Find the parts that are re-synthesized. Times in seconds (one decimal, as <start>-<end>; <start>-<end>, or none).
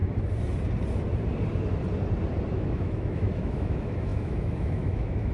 2.5-5.3